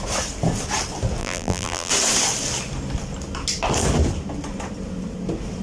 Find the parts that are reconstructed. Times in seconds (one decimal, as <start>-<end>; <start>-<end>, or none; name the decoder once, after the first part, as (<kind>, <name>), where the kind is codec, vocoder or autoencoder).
1.2-1.9 (vocoder, BigVGAN v2)